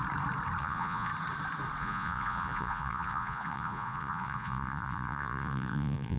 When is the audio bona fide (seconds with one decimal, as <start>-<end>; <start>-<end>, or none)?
0.0-0.6; 1.1-1.8

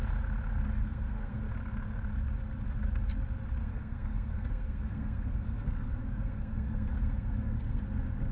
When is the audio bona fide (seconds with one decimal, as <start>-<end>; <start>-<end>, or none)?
0.0-0.8; 1.4-3.6; 7.8-8.3

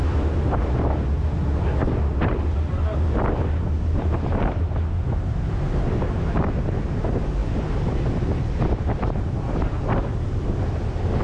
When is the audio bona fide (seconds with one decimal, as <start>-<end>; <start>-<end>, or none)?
0.0-7.4; 9.9-11.2